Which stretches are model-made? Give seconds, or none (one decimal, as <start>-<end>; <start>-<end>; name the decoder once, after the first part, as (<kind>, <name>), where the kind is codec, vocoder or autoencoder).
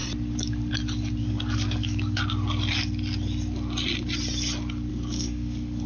1.2-2.2 (codec, DAC); 4.9-5.9